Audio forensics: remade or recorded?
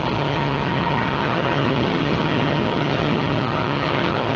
remade